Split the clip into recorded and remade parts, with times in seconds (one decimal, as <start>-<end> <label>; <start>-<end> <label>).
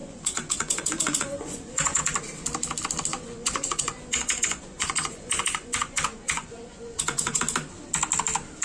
0.0-2.0 remade; 2.0-3.1 recorded; 3.1-7.4 remade; 7.4-8.6 recorded